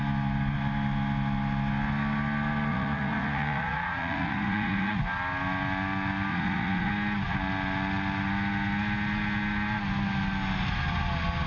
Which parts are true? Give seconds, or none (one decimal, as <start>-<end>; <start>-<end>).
0.0-2.7; 5.0-6.3; 6.9-11.5